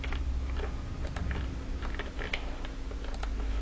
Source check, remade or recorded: recorded